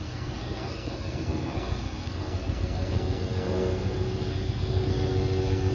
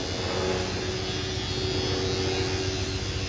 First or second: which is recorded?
second